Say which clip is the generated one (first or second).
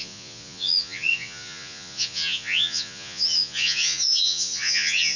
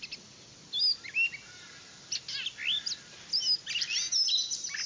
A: first